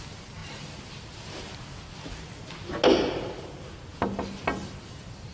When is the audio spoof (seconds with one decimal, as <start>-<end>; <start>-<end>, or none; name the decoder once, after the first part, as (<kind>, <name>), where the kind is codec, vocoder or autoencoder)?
none